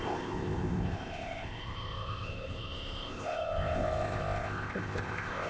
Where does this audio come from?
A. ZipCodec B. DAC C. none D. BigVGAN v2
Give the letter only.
A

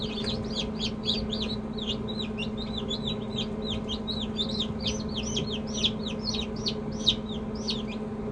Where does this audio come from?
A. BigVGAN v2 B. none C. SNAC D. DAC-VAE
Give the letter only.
B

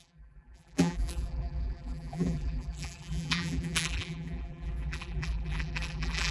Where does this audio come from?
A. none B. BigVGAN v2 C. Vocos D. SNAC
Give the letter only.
B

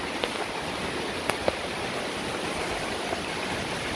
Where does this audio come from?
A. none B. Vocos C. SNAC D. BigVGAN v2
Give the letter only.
D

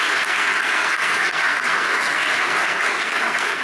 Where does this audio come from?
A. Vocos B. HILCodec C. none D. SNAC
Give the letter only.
D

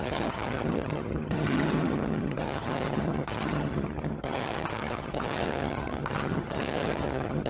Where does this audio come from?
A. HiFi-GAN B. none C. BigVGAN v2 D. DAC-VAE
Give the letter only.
A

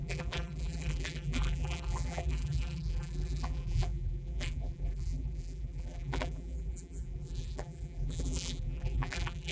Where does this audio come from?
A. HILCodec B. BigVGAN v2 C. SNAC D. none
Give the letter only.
B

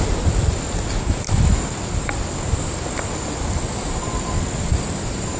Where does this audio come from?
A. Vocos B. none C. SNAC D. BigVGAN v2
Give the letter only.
B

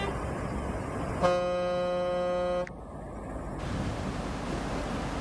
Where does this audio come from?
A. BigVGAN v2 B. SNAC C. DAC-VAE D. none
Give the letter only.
D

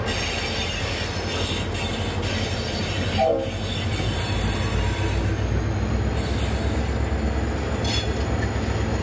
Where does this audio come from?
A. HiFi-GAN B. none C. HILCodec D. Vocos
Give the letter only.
B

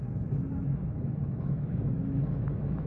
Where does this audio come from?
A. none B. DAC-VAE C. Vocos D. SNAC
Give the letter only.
B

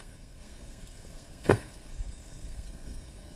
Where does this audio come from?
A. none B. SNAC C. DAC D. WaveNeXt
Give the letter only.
B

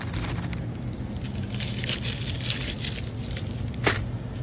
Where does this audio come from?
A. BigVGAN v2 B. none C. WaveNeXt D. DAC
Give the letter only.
B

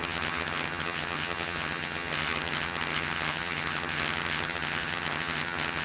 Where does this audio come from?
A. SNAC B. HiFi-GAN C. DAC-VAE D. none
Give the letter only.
B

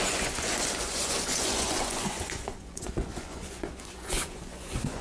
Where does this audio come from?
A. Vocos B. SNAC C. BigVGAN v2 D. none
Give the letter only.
A